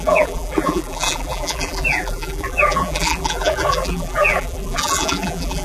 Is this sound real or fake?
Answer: fake